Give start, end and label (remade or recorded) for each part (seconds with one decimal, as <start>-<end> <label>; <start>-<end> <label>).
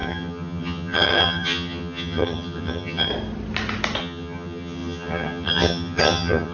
0.0-3.1 remade; 3.1-4.0 recorded; 4.0-6.5 remade